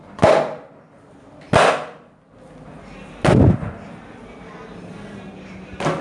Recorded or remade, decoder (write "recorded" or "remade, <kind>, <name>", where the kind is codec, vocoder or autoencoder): recorded